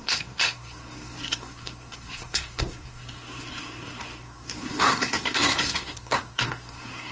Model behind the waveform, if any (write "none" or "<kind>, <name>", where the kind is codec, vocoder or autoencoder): codec, SNAC